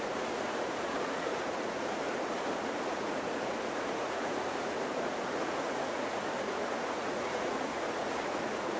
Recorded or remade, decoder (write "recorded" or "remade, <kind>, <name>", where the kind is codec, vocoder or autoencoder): remade, vocoder, Vocos